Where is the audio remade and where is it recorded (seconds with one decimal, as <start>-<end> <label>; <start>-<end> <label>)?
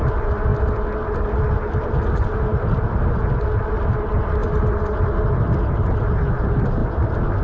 0.0-7.4 recorded